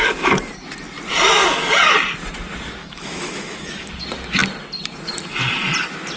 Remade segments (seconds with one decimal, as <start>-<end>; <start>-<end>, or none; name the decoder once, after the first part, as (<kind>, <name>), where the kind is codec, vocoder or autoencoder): 2.8-3.9 (autoencoder, DAC-VAE)